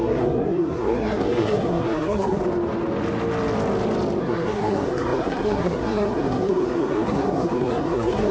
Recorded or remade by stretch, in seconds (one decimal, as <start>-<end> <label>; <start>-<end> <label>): 0.0-2.4 remade; 2.4-4.2 recorded; 4.2-8.3 remade